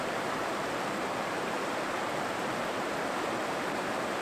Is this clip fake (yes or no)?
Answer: yes